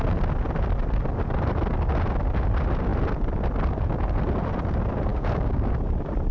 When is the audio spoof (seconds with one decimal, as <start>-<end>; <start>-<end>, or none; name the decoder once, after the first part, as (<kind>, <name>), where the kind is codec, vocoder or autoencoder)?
5.1-5.7 (codec, DAC)